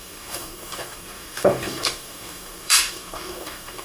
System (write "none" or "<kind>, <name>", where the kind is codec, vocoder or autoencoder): codec, DAC